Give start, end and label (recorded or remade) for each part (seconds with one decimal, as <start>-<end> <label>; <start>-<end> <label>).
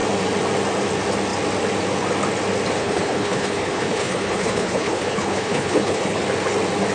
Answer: 0.0-2.8 recorded; 2.8-6.2 remade; 6.2-6.9 recorded